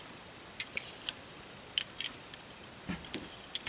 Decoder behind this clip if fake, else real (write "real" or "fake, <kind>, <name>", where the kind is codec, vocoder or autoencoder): fake, vocoder, BigVGAN v2